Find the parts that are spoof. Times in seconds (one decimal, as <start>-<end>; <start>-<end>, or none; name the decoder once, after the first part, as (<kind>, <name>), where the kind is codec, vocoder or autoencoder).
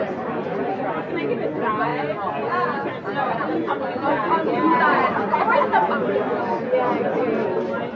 3.2-3.8 (vocoder, BigVGAN v2); 4.7-5.4